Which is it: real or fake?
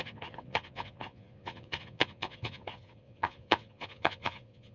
fake